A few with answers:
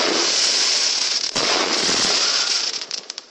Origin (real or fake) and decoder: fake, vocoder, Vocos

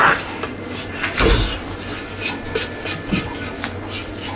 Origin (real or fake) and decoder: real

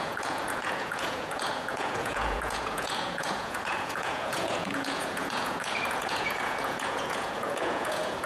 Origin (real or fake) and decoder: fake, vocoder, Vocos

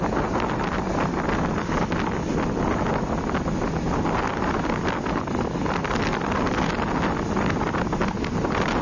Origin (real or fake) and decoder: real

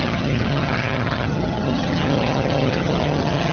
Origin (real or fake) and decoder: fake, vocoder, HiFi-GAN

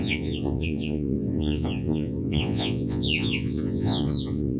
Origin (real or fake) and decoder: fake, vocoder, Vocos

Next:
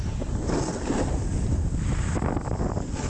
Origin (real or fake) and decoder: real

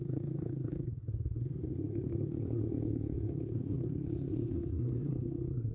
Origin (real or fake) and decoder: fake, codec, SNAC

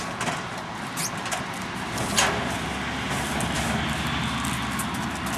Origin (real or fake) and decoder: real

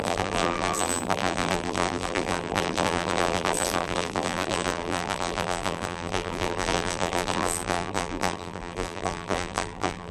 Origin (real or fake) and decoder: fake, vocoder, BigVGAN v2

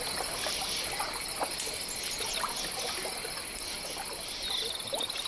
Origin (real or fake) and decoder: real